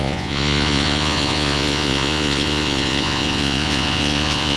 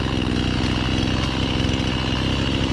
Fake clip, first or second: first